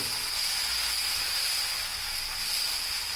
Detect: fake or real real